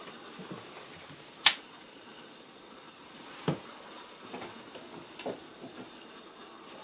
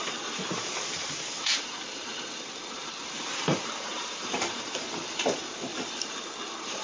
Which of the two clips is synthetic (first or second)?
second